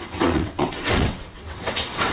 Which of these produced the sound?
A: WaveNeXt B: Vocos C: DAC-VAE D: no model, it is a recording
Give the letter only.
A